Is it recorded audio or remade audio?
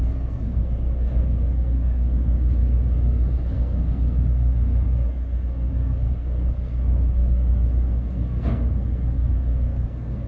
remade